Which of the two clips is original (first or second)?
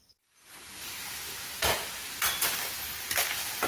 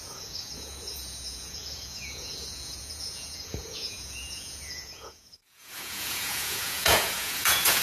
first